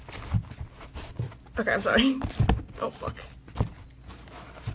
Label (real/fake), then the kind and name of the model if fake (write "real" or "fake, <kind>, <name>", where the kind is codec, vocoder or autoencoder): real